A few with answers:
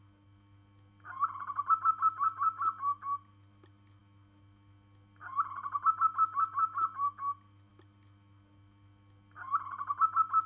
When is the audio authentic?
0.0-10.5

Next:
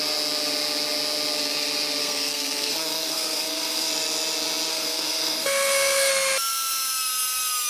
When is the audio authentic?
0.0-2.0; 3.9-4.7; 6.1-7.7

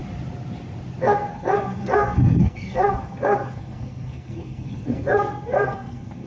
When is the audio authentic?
0.0-1.0

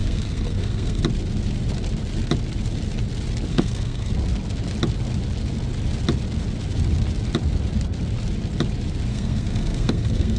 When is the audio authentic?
1.0-3.5; 4.1-9.1